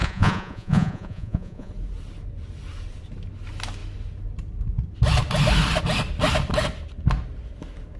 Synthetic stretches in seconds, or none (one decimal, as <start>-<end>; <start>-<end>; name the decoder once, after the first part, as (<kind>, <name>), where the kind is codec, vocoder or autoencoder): 0.0-1.7 (vocoder, Vocos)